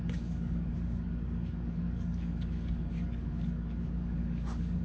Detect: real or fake fake